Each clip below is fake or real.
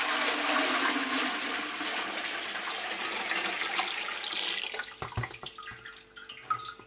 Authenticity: real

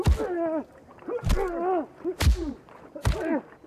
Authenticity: real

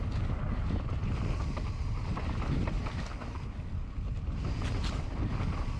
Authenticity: real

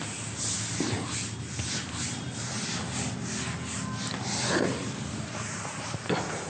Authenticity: real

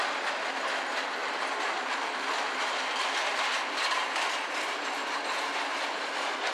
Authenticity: real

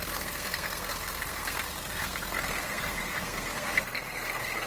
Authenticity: fake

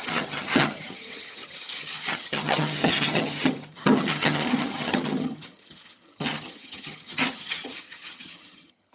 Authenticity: fake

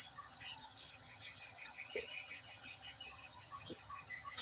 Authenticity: fake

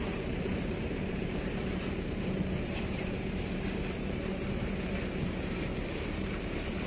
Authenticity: fake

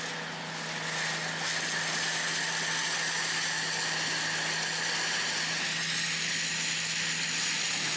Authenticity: real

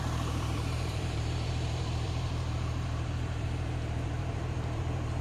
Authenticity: fake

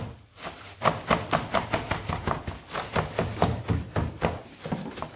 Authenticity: real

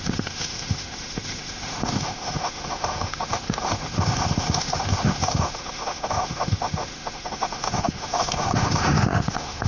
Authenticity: fake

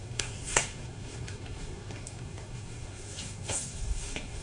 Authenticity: fake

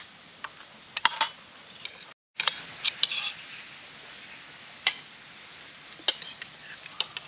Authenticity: real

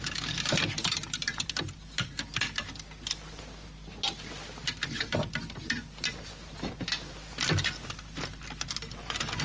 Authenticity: real